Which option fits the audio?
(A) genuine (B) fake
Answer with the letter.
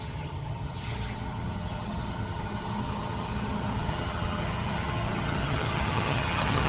B